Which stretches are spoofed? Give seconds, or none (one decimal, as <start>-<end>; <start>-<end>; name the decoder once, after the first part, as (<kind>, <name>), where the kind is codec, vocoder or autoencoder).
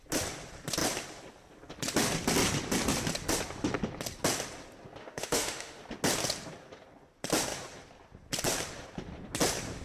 5.0-5.8 (autoencoder, DAC-VAE)